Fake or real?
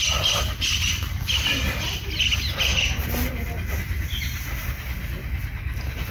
real